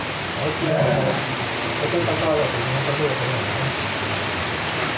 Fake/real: real